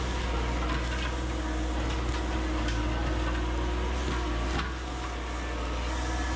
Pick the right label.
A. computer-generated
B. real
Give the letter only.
B